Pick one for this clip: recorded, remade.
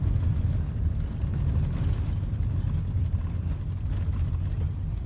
recorded